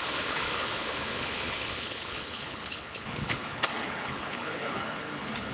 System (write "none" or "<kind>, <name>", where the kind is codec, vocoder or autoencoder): codec, HILCodec